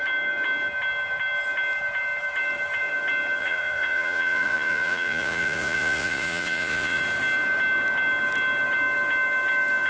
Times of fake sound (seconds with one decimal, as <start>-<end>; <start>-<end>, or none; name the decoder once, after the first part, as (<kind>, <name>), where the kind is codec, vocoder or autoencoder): 3.4-7.0 (vocoder, Vocos)